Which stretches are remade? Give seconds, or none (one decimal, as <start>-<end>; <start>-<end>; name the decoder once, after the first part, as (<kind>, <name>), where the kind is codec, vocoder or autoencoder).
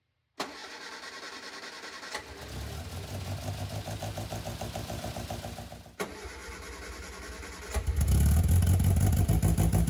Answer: none